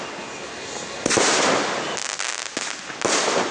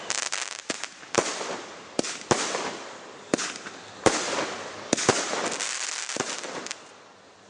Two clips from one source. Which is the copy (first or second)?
second